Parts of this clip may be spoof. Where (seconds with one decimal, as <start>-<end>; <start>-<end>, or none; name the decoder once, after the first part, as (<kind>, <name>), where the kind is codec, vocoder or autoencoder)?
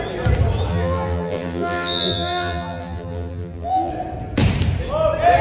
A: 0.7-3.9 (vocoder, BigVGAN v2)